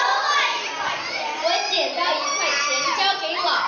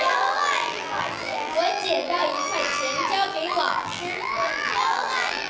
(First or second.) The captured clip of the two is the first